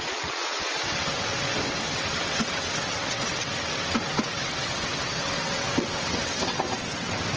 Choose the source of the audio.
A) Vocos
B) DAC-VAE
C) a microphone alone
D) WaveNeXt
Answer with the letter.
D